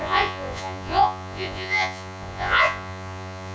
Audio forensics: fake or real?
fake